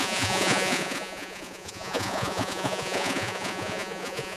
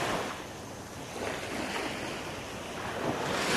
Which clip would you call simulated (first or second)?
first